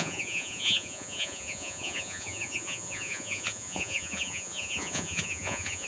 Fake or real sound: fake